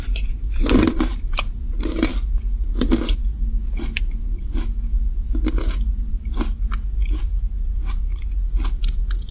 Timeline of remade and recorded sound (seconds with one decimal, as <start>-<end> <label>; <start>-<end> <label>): 0.0-2.1 remade; 2.1-2.7 recorded; 2.7-3.2 remade; 3.2-5.9 recorded; 5.9-6.6 remade; 6.6-7.2 recorded; 7.2-9.3 remade